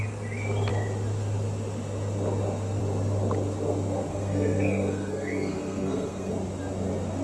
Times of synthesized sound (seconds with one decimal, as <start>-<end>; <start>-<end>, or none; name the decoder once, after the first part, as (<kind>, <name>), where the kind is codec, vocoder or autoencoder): 4.1-6.3 (codec, SNAC)